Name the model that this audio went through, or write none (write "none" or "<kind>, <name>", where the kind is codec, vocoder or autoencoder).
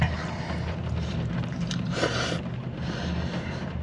vocoder, BigVGAN v2